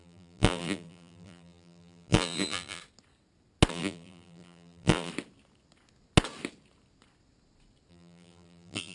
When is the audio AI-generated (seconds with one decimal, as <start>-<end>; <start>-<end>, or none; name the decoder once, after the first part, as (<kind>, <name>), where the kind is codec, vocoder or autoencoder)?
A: 0.0-2.8 (vocoder, BigVGAN v2); 3.7-5.1; 7.9-8.9